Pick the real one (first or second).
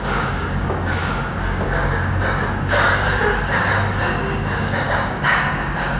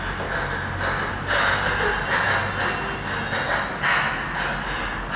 second